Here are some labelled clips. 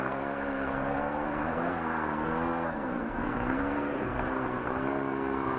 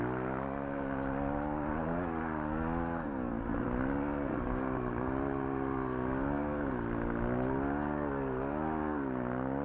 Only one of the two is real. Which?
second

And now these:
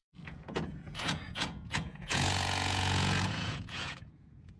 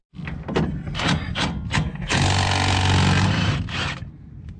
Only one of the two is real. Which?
second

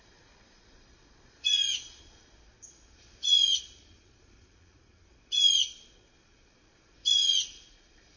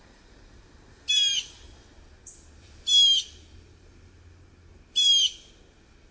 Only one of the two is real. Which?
second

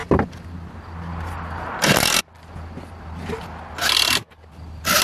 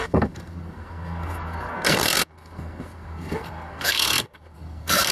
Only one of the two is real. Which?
first